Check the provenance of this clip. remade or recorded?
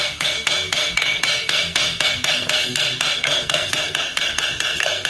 remade